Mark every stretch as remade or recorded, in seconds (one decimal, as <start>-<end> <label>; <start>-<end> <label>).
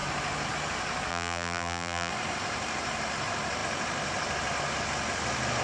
0.0-1.1 recorded; 1.1-2.1 remade; 2.1-5.6 recorded